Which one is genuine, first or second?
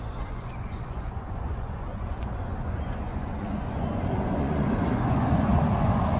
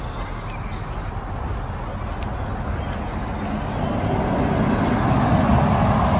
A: second